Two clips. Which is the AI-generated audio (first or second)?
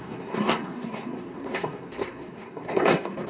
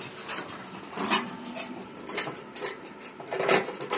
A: first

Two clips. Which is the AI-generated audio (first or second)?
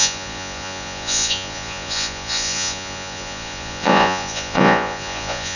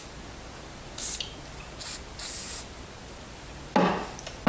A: first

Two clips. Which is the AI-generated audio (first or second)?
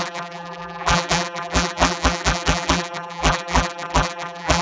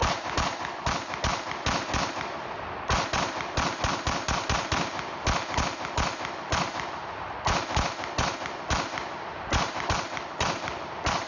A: first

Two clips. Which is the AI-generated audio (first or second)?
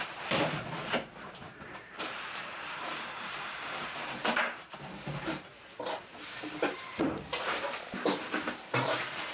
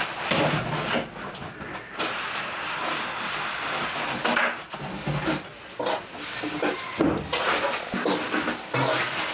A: first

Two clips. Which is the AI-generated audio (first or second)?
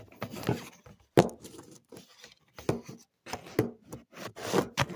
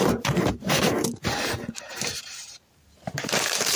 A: second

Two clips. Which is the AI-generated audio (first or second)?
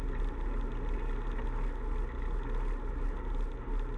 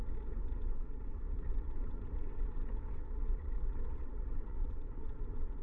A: second